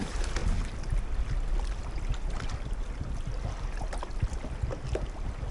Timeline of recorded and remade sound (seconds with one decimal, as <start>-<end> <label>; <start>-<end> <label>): 0.0-5.5 recorded